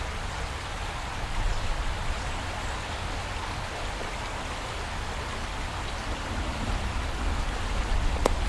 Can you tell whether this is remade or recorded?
recorded